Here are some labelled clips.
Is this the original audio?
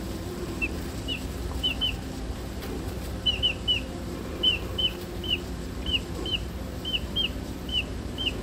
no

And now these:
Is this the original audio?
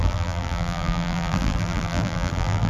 no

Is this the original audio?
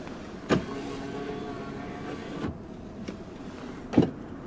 yes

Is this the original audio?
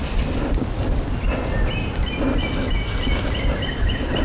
yes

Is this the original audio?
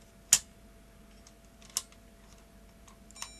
yes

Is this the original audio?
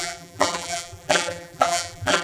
no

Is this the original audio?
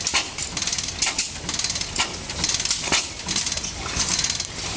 yes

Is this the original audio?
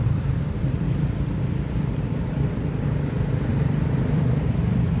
no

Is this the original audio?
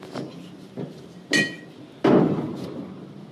yes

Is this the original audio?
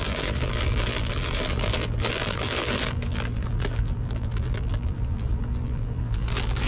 no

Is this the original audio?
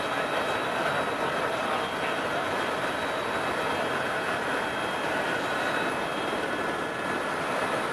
yes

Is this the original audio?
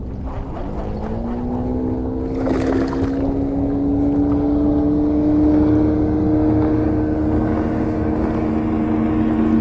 yes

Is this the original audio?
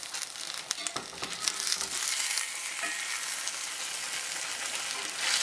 yes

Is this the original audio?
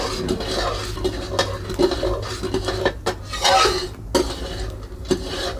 yes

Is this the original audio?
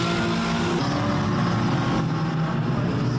yes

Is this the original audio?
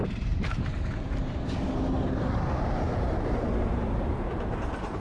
no